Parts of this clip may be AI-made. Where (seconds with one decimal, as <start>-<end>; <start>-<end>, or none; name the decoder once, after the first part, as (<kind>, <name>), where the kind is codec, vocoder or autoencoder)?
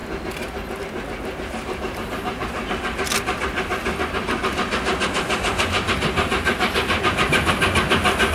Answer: none